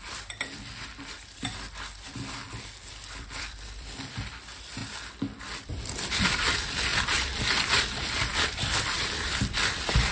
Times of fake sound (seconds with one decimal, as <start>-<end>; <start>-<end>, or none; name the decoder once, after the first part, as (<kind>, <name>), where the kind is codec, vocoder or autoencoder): 0.0-2.4 (vocoder, BigVGAN v2); 2.9-4.8; 6.3-6.9; 7.8-10.1